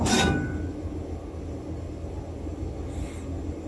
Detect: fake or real real